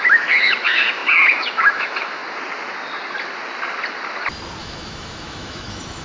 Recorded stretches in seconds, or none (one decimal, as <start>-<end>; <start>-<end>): 2.2-4.6

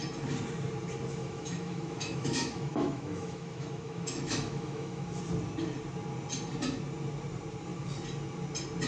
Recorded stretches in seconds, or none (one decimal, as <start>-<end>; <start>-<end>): 0.0-1.2; 5.2-8.9

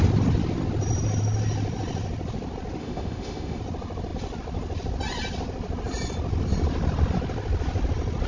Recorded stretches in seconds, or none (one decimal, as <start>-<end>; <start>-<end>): 0.0-2.8; 3.6-8.3